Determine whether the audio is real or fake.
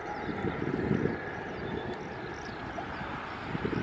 real